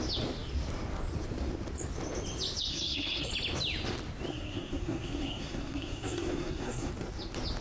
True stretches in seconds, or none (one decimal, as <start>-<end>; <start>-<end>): 0.0-2.7; 3.3-4.3; 6.9-7.6